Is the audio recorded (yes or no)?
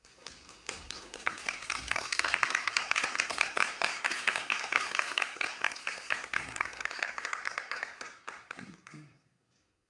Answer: no